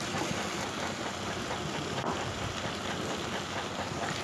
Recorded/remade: recorded